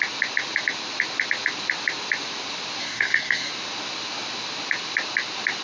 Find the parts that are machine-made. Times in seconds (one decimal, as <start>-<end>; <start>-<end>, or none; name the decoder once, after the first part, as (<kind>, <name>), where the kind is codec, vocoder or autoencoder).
2.8-3.5 (codec, SNAC)